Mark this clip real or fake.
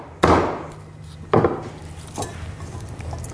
real